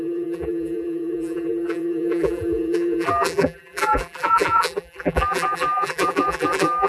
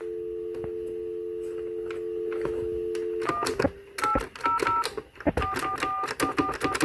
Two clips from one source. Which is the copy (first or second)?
first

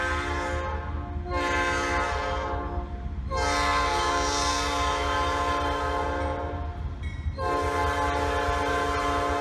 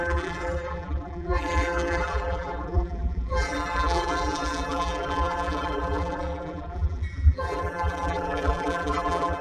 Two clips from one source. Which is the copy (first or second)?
second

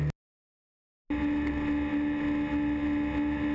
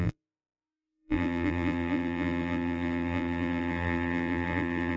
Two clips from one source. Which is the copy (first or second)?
second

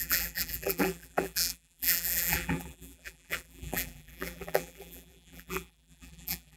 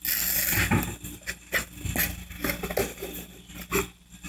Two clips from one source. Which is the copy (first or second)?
first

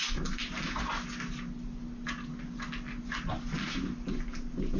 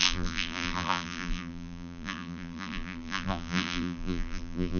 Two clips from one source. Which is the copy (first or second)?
second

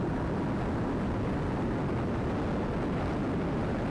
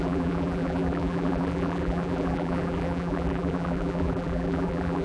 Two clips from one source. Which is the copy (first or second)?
second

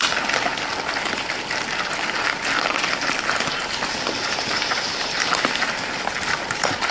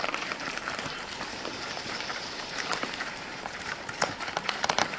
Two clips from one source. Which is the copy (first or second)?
second